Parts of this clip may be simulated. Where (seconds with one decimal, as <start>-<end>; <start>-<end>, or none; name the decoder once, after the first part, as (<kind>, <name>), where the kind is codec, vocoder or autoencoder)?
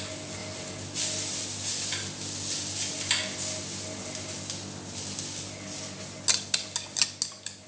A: none